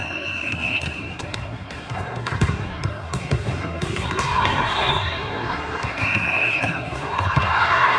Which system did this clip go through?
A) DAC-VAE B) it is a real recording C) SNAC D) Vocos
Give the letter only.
C